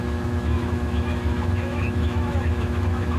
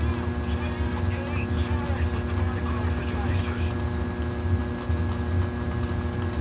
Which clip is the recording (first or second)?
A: second